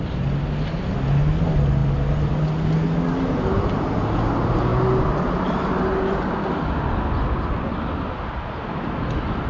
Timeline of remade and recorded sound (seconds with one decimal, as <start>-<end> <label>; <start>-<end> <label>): 0.0-9.5 recorded